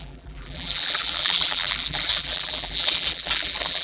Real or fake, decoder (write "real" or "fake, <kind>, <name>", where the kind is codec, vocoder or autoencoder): fake, vocoder, BigVGAN v2